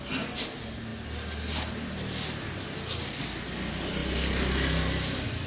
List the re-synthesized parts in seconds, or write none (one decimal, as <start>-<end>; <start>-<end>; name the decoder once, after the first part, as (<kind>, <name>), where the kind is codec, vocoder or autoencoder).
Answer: none